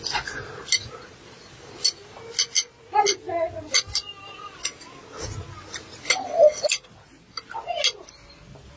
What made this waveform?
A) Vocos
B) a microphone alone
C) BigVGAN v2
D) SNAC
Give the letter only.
B